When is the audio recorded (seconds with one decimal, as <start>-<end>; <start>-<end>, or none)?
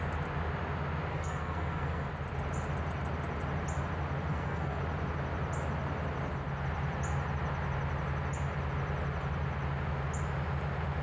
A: 0.0-1.1; 2.1-4.3; 4.8-11.0